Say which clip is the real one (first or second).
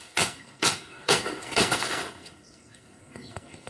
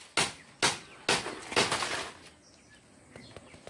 second